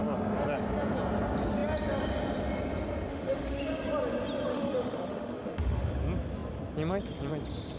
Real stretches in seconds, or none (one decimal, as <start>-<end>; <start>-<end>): 0.0-3.1; 3.7-4.5; 5.9-7.8